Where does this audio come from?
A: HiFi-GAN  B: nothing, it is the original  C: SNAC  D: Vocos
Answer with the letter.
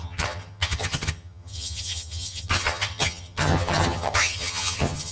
A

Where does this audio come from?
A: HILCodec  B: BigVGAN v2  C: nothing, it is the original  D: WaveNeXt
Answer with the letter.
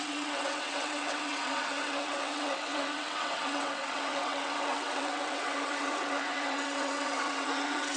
D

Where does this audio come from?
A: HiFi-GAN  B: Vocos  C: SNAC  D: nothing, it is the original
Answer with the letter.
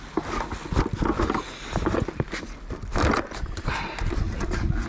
D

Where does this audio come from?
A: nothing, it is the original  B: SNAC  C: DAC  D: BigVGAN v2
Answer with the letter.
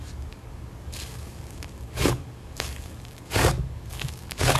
C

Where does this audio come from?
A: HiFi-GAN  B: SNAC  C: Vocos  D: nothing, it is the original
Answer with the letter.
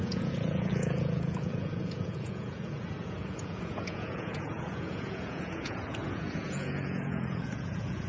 C